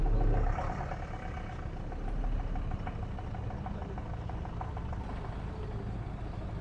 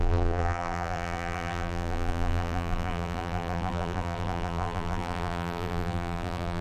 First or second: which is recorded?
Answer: first